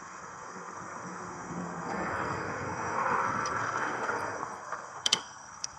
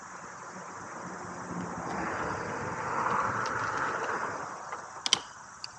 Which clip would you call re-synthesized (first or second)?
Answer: first